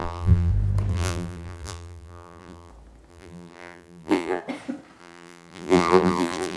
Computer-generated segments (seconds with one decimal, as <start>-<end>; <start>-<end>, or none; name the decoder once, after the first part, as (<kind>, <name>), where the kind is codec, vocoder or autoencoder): 0.0-0.5 (vocoder, BigVGAN v2); 0.9-2.7; 3.1-4.4; 5.0-6.6